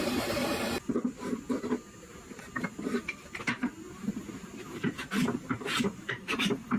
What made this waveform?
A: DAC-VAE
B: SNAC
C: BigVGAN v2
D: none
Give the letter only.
C